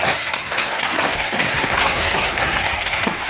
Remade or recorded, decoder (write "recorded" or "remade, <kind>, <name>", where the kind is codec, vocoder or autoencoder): remade, codec, SNAC